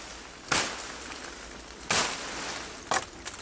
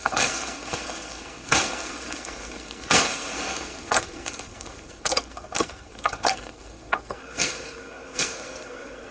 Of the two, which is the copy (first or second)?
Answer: second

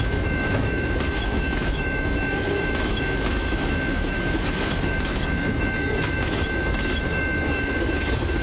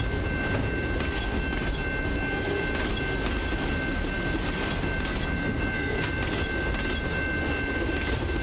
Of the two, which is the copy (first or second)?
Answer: first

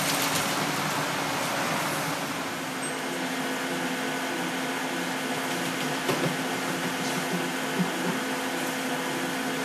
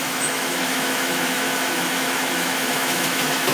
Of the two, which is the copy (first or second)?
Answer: second